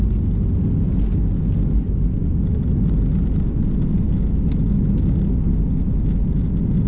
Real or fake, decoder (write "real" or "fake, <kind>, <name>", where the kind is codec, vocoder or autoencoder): real